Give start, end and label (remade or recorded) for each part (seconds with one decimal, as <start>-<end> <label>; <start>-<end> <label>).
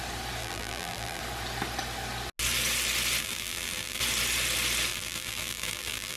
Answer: 0.0-0.4 recorded; 0.4-1.2 remade; 1.2-3.2 recorded; 3.2-4.0 remade; 4.0-4.9 recorded; 4.9-6.2 remade